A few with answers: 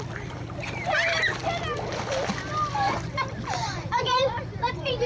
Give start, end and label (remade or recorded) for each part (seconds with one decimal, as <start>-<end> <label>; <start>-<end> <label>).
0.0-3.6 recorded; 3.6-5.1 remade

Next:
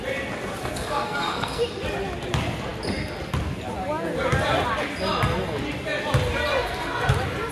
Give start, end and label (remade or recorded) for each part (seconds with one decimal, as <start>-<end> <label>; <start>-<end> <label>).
0.0-0.7 recorded; 0.7-1.6 remade; 1.6-6.5 recorded; 6.5-7.1 remade; 7.1-7.5 recorded

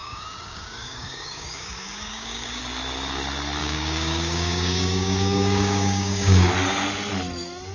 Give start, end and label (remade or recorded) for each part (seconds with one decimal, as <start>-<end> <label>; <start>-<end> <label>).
0.0-2.6 remade; 2.6-3.6 recorded; 3.6-6.5 remade; 6.5-7.7 recorded

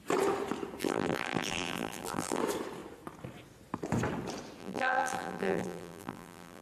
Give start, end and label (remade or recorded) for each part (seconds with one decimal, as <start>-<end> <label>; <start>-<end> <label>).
0.0-0.8 recorded; 0.8-2.4 remade; 2.4-4.6 recorded; 4.6-6.6 remade

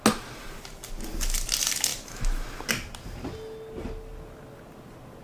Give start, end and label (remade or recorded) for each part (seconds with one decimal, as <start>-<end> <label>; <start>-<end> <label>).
0.0-5.2 recorded

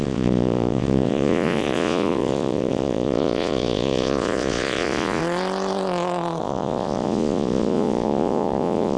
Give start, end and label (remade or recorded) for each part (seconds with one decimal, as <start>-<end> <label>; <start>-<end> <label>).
0.0-5.2 remade; 5.2-6.4 recorded; 6.4-9.0 remade

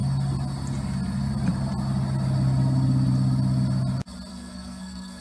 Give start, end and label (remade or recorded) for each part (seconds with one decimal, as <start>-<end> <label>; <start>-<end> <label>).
0.0-4.3 recorded; 4.3-5.2 remade

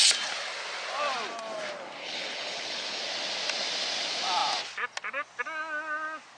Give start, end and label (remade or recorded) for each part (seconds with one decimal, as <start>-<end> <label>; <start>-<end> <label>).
0.0-2.0 recorded; 2.0-3.0 remade; 3.0-6.4 recorded